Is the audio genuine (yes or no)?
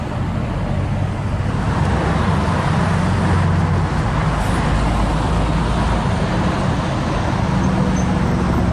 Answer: yes